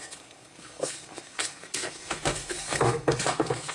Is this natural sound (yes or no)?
no